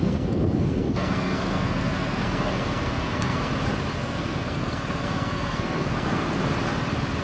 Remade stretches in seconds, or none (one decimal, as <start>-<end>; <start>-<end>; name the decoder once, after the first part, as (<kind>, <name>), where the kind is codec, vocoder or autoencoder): 0.0-3.5 (codec, SNAC); 4.0-6.4